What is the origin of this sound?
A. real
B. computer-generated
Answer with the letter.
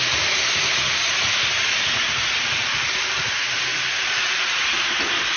A